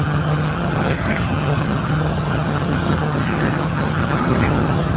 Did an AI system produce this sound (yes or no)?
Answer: yes